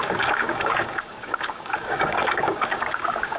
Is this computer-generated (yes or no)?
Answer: yes